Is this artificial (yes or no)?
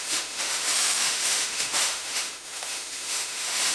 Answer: yes